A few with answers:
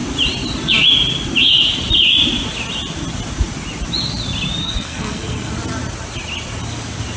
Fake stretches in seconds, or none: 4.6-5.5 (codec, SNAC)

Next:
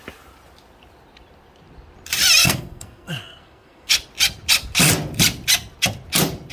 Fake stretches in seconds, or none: 2.4-3.9 (codec, SNAC)

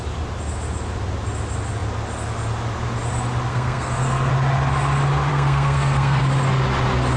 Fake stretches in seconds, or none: 3.5-4.3 (codec, SNAC); 5.3-6.2